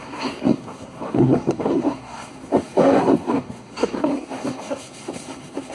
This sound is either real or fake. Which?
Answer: fake